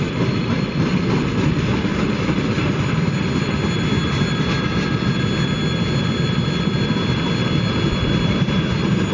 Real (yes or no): yes